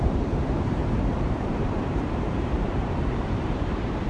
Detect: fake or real fake